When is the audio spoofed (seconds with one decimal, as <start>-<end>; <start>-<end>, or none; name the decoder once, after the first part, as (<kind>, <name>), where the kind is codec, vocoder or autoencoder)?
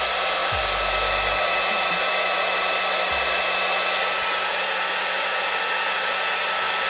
none